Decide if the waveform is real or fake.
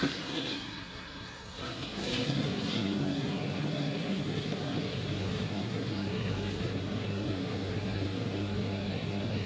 fake